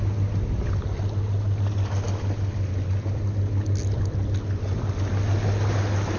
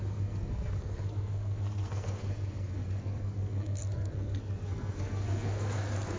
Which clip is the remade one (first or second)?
second